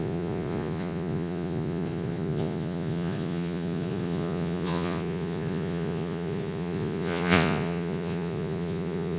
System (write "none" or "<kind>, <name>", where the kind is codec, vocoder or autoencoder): vocoder, Vocos